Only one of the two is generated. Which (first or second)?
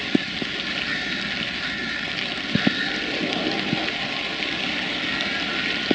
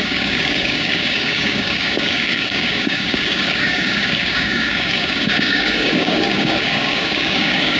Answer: second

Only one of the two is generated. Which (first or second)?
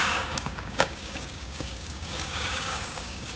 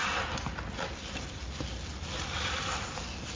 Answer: first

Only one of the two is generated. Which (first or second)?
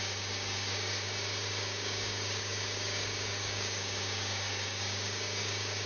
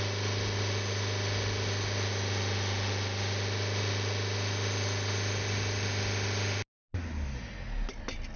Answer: first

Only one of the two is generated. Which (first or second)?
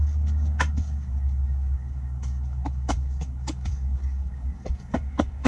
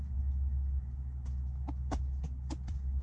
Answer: first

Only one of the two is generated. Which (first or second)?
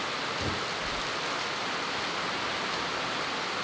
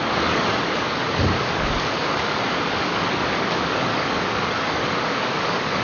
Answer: second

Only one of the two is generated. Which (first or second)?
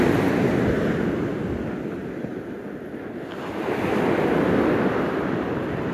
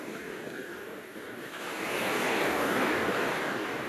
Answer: second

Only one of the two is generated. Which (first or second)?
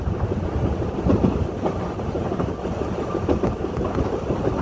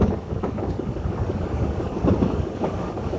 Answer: second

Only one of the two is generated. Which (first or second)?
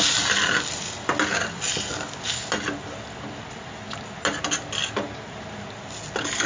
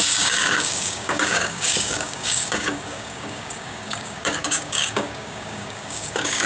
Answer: second